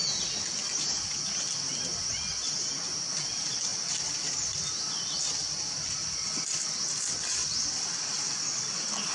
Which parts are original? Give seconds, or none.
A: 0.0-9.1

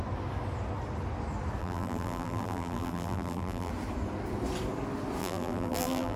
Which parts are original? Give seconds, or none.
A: 0.0-1.6; 3.7-5.2

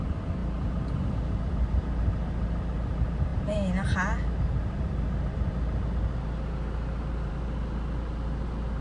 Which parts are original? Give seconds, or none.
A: 0.0-8.8

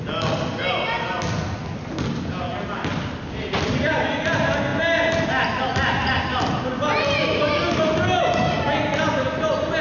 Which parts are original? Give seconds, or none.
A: 0.0-9.8

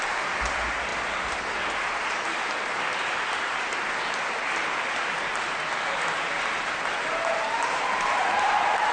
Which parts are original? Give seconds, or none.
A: 0.0-7.1